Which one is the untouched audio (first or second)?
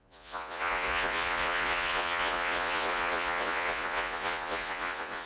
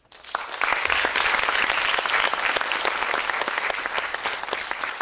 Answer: second